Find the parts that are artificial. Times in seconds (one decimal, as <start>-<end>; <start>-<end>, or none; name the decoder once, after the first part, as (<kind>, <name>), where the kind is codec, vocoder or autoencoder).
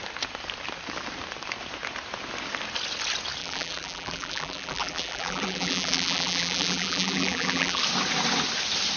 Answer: 3.4-7.8 (vocoder, BigVGAN v2)